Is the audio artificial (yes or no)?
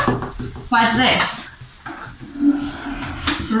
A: no